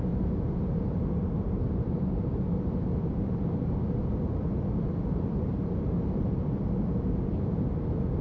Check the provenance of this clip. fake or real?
fake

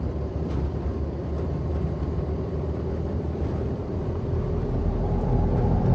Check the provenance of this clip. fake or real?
fake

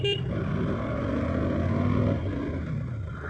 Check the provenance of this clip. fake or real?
real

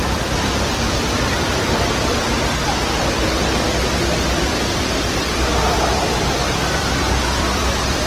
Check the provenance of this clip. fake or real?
fake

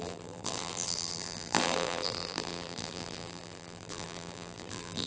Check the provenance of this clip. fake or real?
fake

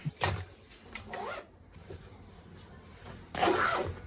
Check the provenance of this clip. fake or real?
fake